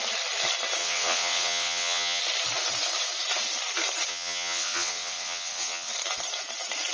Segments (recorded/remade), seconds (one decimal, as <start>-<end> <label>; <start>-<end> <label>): 0.0-0.8 recorded; 0.8-2.2 remade; 2.2-4.1 recorded; 4.1-5.9 remade; 5.9-6.9 recorded